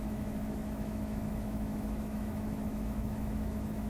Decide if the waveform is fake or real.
fake